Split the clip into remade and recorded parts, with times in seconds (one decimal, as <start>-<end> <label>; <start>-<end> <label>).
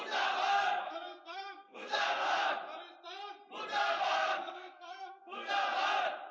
0.0-0.5 recorded; 0.5-2.5 remade; 2.5-3.8 recorded; 3.8-5.5 remade; 5.5-6.3 recorded